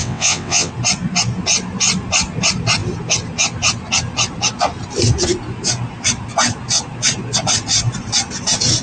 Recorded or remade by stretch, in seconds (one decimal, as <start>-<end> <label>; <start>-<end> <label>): 0.0-0.7 remade; 0.7-8.8 recorded